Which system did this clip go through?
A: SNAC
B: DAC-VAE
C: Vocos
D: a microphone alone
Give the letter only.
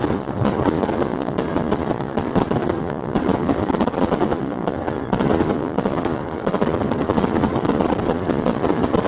C